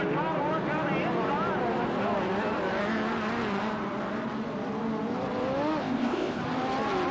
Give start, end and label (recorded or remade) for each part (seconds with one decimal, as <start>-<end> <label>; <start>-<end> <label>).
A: 0.0-5.8 recorded; 5.8-6.4 remade; 6.4-7.1 recorded